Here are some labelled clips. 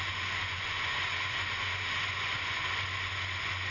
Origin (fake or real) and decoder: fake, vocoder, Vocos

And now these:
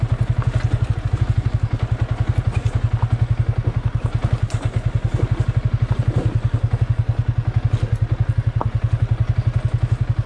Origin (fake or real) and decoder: real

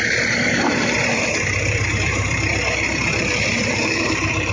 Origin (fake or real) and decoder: fake, vocoder, BigVGAN v2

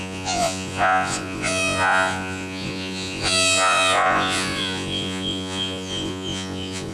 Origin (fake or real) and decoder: fake, vocoder, Vocos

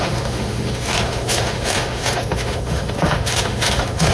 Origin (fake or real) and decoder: fake, autoencoder, DAC-VAE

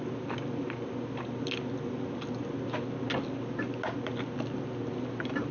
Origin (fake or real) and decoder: real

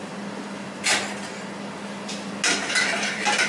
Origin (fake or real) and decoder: real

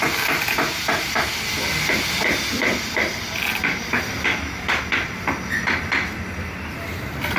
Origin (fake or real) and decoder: real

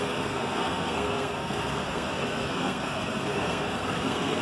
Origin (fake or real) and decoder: fake, codec, SNAC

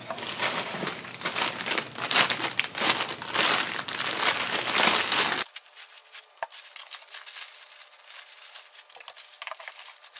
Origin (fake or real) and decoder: real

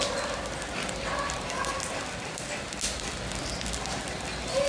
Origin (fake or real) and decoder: real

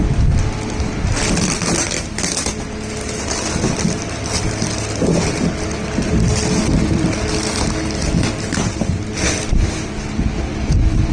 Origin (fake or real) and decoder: real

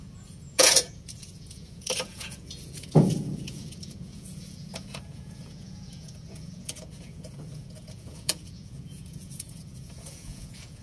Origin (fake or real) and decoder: fake, vocoder, Vocos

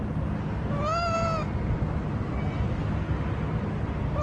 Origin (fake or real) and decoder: real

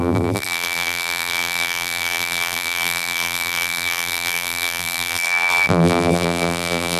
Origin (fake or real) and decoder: fake, vocoder, BigVGAN v2